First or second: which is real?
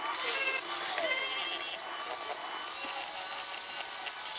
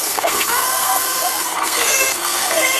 first